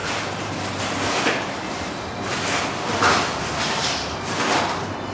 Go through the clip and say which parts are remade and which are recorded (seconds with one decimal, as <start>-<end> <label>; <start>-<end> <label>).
0.0-0.5 remade; 0.5-5.1 recorded